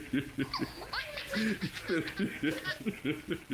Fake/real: real